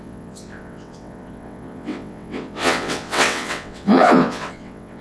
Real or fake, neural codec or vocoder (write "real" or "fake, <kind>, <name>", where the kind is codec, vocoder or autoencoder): fake, vocoder, WaveNeXt